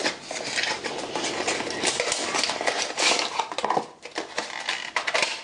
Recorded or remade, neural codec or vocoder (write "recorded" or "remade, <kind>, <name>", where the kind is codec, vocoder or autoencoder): recorded